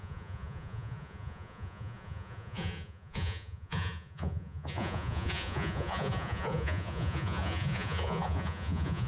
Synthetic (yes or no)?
yes